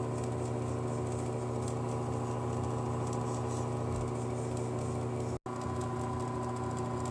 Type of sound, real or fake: real